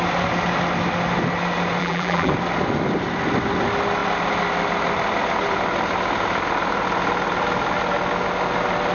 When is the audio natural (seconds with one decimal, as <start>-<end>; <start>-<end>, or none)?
0.0-1.8; 2.3-8.9